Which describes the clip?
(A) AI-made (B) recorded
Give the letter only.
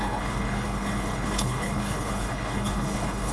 A